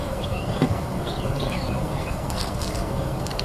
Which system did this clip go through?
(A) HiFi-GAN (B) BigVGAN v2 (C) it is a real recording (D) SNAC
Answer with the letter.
D